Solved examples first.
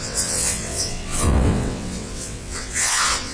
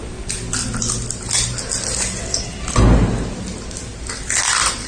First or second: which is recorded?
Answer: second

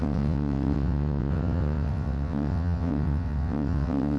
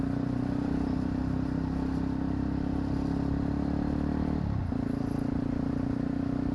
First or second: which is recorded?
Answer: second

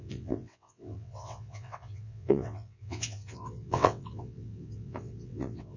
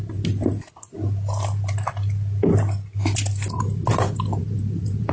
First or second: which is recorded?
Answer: second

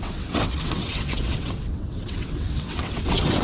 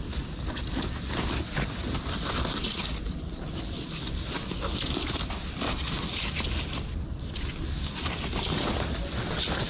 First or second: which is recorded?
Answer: second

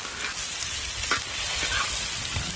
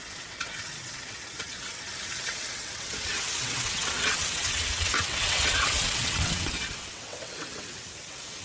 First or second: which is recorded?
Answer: first